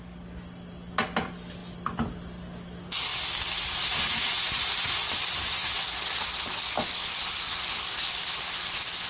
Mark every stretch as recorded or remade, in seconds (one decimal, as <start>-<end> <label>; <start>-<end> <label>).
0.0-9.1 recorded